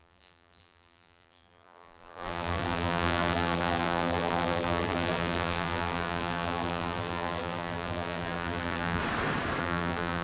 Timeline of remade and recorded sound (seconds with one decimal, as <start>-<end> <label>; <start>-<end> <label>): 0.0-9.0 remade; 9.0-9.6 recorded; 9.6-10.2 remade

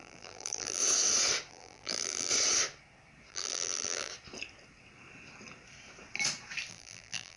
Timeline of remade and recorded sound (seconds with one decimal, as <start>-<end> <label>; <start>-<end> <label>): 0.0-0.8 remade; 0.8-1.5 recorded; 1.5-2.3 remade; 2.3-3.3 recorded; 3.3-4.1 remade; 4.1-6.7 recorded; 6.7-7.4 remade

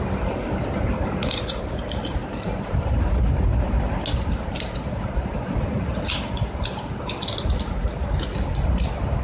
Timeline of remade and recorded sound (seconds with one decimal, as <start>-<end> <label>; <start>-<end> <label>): 0.0-2.2 recorded; 2.2-3.2 remade; 3.2-9.2 recorded

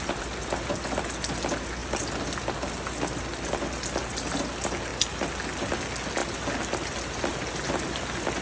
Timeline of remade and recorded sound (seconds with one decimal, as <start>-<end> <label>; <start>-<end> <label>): 0.0-8.4 recorded

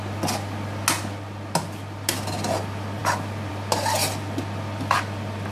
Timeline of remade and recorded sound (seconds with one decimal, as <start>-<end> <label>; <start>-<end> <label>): 0.0-5.5 recorded